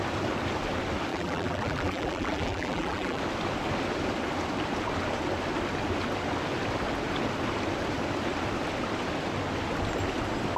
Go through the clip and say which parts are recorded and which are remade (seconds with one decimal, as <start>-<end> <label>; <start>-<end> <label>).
0.0-1.1 recorded; 1.1-3.2 remade; 3.2-10.6 recorded

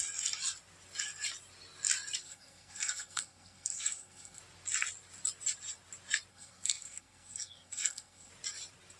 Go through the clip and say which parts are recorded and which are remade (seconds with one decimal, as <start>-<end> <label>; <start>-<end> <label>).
0.0-2.2 recorded; 2.2-4.4 remade; 4.4-6.3 recorded; 6.3-8.3 remade; 8.3-9.0 recorded

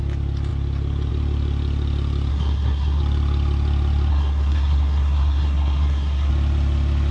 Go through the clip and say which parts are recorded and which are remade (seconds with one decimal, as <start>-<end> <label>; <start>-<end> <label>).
0.0-2.3 recorded; 2.3-3.0 remade; 3.0-4.1 recorded; 4.1-6.3 remade; 6.3-7.1 recorded